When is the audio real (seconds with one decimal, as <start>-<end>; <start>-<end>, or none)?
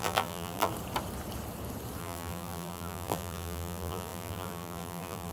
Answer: 0.7-2.0